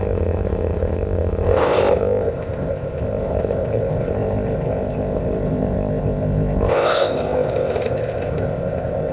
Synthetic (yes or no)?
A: yes